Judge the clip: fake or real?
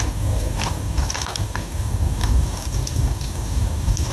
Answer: fake